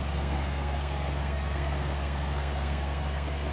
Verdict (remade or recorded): remade